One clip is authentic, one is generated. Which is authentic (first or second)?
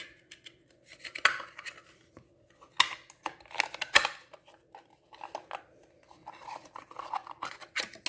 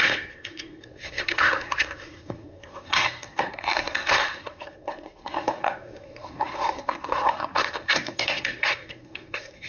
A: first